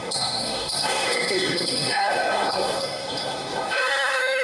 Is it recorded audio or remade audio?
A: remade